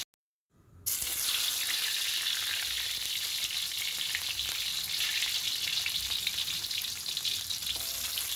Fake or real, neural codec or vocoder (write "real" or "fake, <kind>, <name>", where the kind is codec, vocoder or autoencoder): real